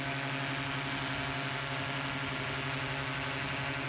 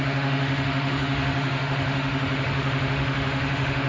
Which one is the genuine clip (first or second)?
first